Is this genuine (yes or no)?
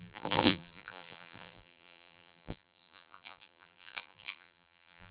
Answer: no